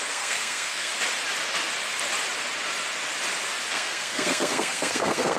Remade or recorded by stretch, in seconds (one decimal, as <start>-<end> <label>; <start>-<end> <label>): 0.0-0.9 remade; 0.9-3.7 recorded; 3.7-5.4 remade